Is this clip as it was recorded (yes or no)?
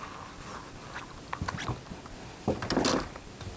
yes